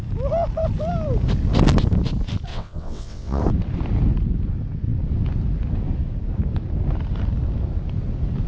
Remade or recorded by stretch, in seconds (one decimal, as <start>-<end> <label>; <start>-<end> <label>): 0.0-2.5 recorded; 2.5-3.4 remade; 3.4-8.5 recorded